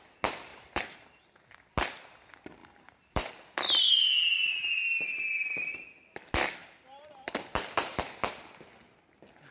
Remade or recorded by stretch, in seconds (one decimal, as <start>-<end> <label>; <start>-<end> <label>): 0.0-0.5 recorded; 0.5-1.2 remade; 1.2-2.6 recorded; 2.6-3.3 remade; 3.3-6.6 recorded; 6.6-8.0 remade; 8.0-9.5 recorded